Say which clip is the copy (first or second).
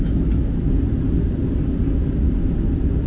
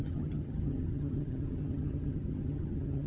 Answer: second